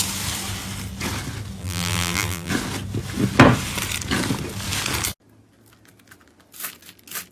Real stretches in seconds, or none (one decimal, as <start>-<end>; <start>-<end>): 0.0-1.6; 2.5-7.3